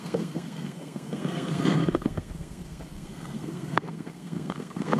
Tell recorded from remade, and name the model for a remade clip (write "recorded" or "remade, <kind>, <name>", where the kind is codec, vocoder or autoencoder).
remade, codec, SNAC